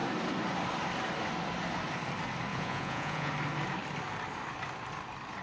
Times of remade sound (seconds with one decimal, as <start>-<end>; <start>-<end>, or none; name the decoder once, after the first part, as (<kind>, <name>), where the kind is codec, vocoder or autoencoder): 2.5-3.3 (vocoder, Vocos)